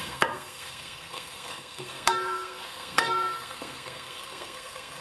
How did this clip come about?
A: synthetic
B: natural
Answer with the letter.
A